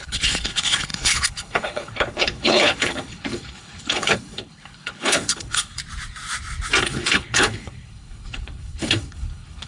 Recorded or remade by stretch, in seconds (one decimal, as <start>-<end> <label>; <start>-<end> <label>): 0.0-5.8 remade; 5.8-6.8 recorded; 6.8-9.7 remade